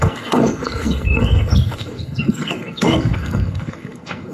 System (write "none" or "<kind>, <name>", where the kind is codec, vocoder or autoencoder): codec, SNAC